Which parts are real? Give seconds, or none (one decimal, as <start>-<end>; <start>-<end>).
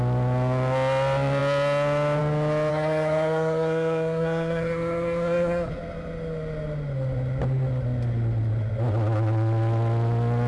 0.0-2.7; 5.7-10.5